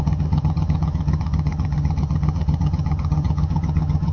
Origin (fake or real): fake